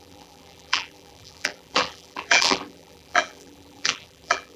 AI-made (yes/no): yes